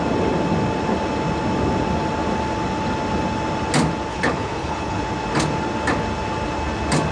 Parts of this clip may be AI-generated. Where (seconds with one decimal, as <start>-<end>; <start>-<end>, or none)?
4.1-5.0